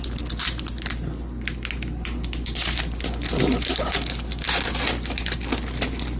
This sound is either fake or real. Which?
real